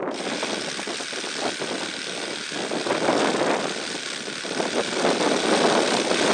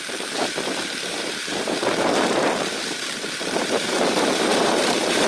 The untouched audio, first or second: first